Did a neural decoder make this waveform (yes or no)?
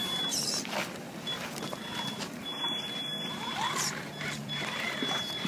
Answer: yes